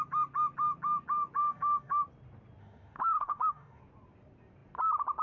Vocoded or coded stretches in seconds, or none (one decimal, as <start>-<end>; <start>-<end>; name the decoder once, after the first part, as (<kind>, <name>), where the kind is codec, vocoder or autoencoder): 1.4-2.0 (autoencoder, DAC-VAE); 2.6-3.8